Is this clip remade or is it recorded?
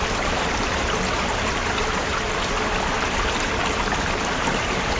recorded